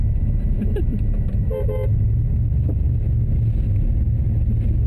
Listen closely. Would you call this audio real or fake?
real